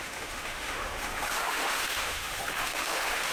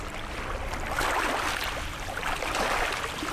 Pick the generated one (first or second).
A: first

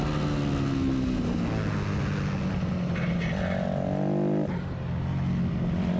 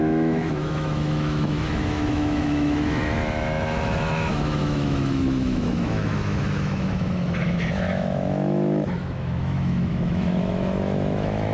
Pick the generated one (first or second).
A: second